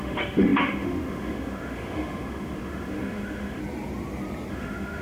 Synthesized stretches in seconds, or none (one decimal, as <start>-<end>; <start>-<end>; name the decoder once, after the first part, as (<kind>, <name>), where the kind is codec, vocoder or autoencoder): 0.0-3.6 (autoencoder, DAC-VAE); 4.5-5.0